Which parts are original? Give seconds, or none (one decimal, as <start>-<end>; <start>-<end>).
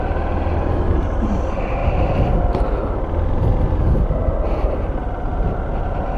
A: 0.0-1.8; 3.4-6.2